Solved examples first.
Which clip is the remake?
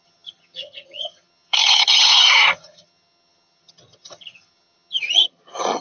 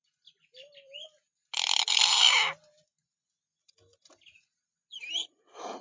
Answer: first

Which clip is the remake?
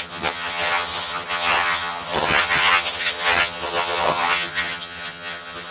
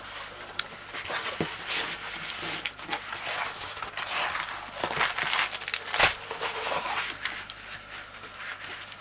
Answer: first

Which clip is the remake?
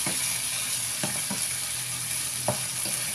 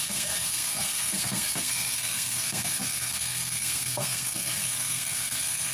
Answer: second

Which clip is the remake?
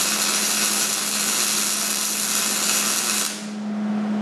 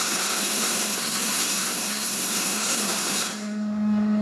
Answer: second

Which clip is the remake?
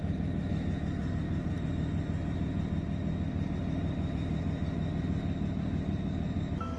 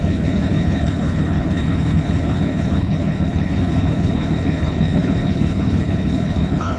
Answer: second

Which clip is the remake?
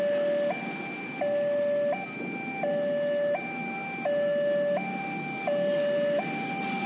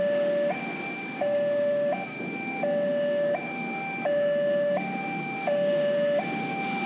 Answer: second